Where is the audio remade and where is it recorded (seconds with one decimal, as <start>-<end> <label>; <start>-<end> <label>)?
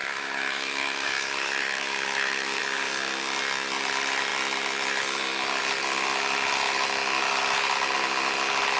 0.0-2.6 remade; 2.6-8.8 recorded